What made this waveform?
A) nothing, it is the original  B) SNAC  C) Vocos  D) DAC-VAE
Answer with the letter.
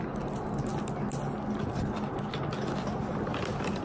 A